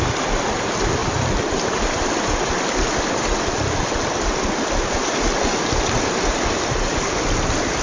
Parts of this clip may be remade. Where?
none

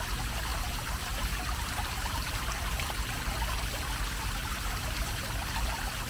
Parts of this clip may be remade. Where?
0.5-2.4; 4.4-5.1

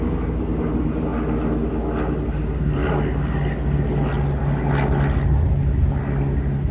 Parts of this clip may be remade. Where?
0.0-1.1; 2.1-2.8

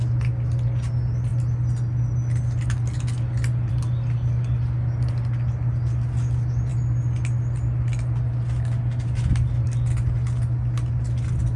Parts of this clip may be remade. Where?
none

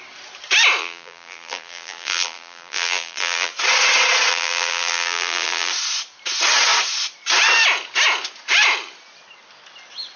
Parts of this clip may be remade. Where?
0.8-3.5; 4.3-5.7